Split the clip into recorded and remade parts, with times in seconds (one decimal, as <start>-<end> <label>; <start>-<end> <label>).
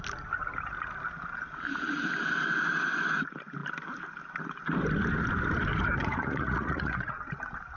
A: 0.0-6.0 recorded; 6.0-7.2 remade; 7.2-7.8 recorded